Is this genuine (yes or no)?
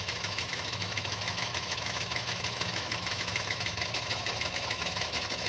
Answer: no